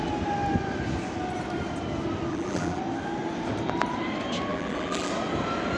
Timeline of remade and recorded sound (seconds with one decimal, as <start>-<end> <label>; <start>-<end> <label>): 0.0-2.3 recorded; 2.3-2.8 remade; 2.8-4.5 recorded; 4.5-5.1 remade; 5.1-5.8 recorded